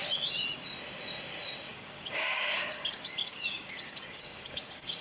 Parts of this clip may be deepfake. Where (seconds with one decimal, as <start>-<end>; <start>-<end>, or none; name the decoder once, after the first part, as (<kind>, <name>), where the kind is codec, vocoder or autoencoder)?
1.7-5.0 (codec, DAC)